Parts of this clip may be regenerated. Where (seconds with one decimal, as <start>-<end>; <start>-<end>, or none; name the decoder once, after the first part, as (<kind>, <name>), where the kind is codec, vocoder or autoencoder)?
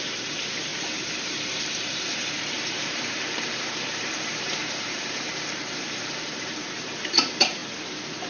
0.0-7.6 (vocoder, BigVGAN v2)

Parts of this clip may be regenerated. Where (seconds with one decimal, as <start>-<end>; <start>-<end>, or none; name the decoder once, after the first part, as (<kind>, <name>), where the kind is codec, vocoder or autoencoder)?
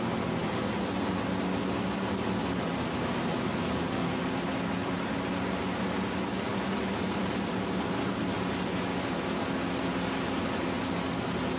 6.5-8.1 (vocoder, BigVGAN v2)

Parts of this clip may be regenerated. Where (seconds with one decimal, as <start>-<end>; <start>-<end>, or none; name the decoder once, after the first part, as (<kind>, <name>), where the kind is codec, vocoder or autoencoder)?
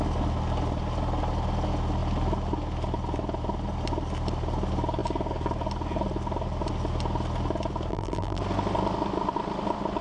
7.9-8.4 (vocoder, BigVGAN v2)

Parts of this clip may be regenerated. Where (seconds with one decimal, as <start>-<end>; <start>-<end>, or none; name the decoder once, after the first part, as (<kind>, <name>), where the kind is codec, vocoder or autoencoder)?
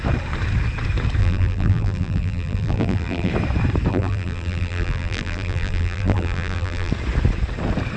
1.2-3.3 (vocoder, BigVGAN v2); 3.9-6.9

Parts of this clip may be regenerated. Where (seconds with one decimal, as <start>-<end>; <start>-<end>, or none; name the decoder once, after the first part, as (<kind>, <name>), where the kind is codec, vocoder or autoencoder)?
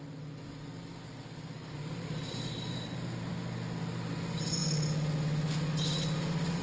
1.6-3.3 (vocoder, BigVGAN v2)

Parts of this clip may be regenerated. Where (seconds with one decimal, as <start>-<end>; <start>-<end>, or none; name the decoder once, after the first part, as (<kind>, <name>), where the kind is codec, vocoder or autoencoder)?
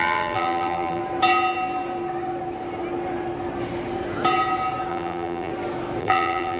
0.0-1.0 (vocoder, BigVGAN v2); 4.9-5.5; 6.0-6.6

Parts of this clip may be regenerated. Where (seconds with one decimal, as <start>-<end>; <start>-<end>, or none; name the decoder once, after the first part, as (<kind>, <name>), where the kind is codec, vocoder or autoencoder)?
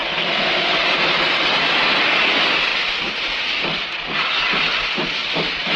0.0-1.7 (vocoder, BigVGAN v2); 2.7-3.8; 5.2-5.8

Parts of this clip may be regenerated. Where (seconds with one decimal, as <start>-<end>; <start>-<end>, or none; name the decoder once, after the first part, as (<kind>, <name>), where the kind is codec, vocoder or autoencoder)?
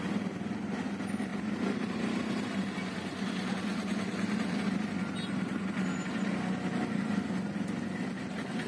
1.3-2.2 (vocoder, BigVGAN v2); 3.9-5.7